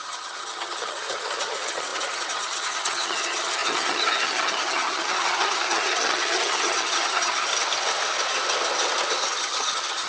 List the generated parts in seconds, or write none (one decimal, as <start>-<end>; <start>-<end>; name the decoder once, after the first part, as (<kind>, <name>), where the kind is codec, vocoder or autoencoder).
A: 0.0-7.5 (vocoder, HiFi-GAN); 9.4-10.1